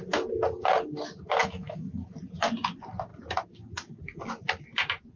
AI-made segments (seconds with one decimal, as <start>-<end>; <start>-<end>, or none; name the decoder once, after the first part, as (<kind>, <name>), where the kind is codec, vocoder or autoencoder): 1.4-1.9 (autoencoder, DAC-VAE)